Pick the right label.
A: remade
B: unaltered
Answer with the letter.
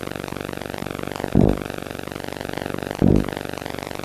A